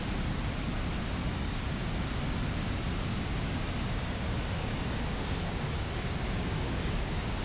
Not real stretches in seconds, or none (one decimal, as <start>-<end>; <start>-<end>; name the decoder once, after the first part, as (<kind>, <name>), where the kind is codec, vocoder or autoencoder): 1.2-1.7 (codec, DAC); 3.1-7.4